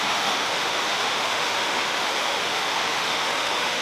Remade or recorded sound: remade